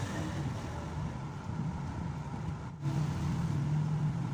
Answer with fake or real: real